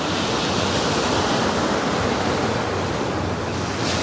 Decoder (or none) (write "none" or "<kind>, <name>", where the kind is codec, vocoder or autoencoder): none